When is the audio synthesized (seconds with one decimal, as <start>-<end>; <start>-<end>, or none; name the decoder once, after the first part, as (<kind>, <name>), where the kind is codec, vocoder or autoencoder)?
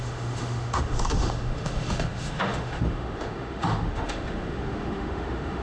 0.0-5.6 (autoencoder, DAC-VAE)